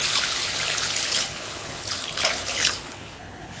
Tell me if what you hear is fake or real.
fake